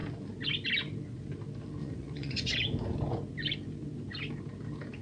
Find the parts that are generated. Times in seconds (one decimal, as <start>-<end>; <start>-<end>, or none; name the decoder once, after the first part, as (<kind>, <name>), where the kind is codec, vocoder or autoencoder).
1.8-2.5 (vocoder, Vocos)